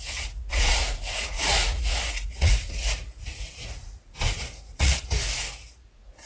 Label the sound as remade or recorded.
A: remade